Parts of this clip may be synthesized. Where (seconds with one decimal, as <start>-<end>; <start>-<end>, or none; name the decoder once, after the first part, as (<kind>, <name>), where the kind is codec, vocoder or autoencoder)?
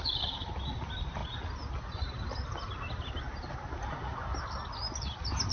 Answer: none